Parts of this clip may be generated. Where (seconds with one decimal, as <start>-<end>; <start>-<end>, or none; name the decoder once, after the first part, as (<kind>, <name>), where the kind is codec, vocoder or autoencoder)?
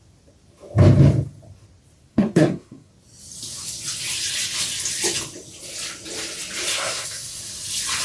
2.1-2.9 (codec, SNAC); 6.7-7.4